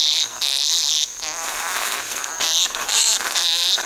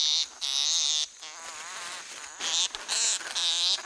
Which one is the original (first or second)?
second